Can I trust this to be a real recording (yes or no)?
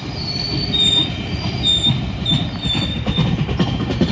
yes